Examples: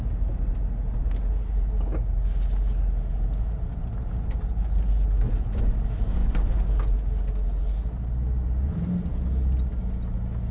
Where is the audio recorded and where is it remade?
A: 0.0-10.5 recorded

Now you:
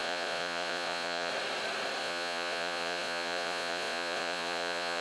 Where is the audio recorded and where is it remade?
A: 0.0-1.3 remade; 1.3-2.0 recorded; 2.0-5.0 remade

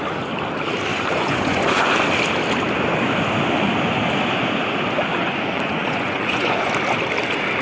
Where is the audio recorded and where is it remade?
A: 0.0-0.9 recorded; 0.9-1.9 remade; 1.9-5.1 recorded; 5.1-6.7 remade; 6.7-7.6 recorded

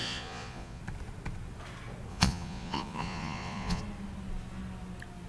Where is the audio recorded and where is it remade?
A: 0.0-0.8 remade; 0.8-2.1 recorded; 2.1-3.8 remade; 3.8-5.3 recorded

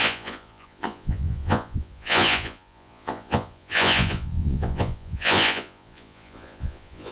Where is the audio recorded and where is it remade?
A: 0.0-7.1 remade

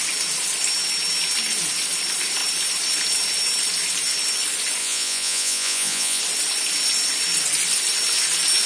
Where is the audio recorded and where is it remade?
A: 0.0-4.8 recorded; 4.8-6.2 remade; 6.2-8.7 recorded

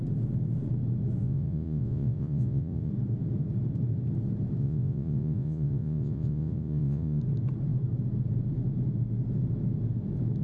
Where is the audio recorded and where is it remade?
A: 0.0-1.2 recorded; 1.2-2.9 remade; 2.9-4.6 recorded; 4.6-7.2 remade; 7.2-10.4 recorded

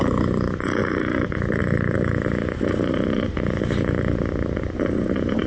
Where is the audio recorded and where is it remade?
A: 0.0-5.5 recorded